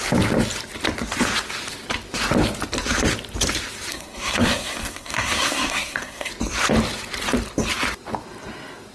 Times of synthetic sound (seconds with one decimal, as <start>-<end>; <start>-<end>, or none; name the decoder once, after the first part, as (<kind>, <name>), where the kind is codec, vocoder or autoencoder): 3.9-6.3 (codec, SNAC)